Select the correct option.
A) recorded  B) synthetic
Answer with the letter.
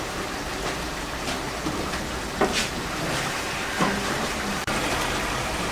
B